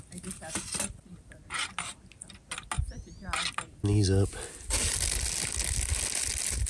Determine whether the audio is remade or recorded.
recorded